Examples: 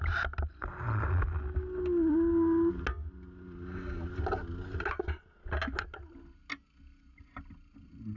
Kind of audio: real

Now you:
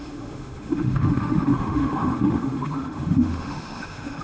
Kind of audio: fake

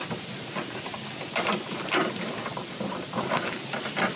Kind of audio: real